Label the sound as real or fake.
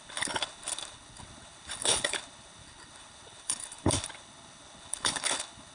fake